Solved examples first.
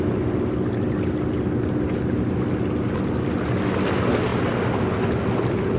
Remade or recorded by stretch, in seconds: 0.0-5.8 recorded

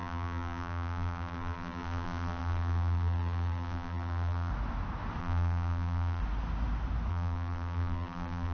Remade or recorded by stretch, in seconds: 0.0-4.5 remade; 4.5-5.2 recorded; 5.2-6.2 remade; 6.2-7.1 recorded; 7.1-8.5 remade